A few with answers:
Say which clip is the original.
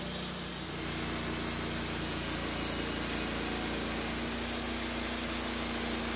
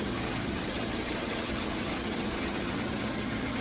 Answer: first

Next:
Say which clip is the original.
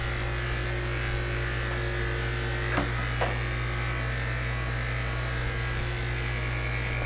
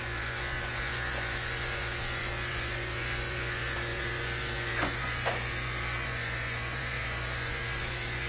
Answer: first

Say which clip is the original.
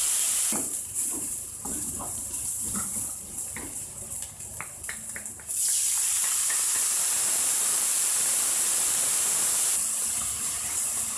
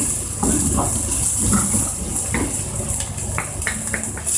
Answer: second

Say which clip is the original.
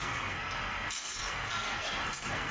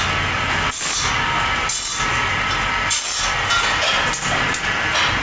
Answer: second